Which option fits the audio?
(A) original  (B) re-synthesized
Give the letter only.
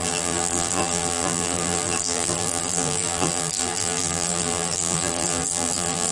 B